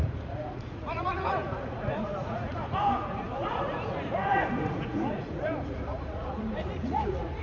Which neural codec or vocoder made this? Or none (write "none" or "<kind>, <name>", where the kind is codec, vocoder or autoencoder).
vocoder, Vocos